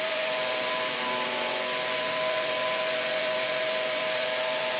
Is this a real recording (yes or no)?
no